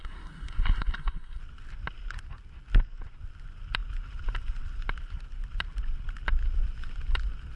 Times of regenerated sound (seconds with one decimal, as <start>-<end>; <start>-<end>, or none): 0.0-1.4